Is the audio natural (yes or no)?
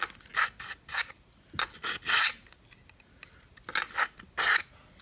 yes